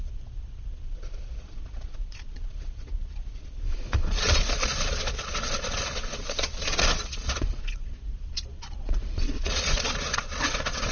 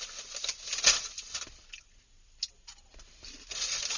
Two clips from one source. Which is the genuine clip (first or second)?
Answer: second